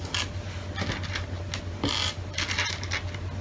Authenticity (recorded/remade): recorded